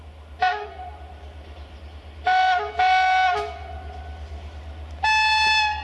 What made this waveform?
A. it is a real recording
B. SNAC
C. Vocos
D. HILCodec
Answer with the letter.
A